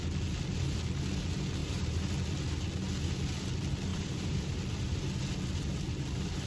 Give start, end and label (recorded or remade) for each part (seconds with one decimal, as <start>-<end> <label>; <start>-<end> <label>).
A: 0.0-1.6 recorded; 1.6-2.1 remade; 2.1-3.9 recorded; 3.9-4.5 remade; 4.5-6.5 recorded